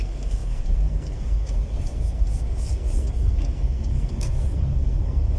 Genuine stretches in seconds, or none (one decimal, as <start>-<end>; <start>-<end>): none